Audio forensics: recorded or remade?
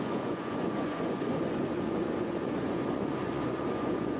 remade